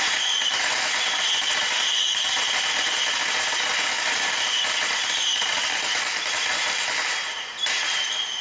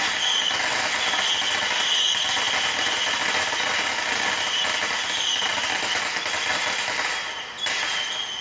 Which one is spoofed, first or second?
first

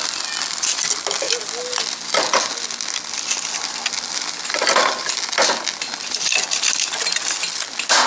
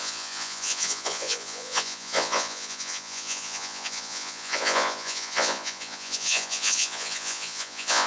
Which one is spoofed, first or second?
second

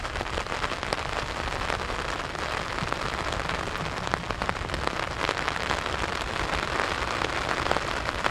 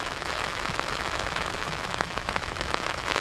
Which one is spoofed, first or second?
second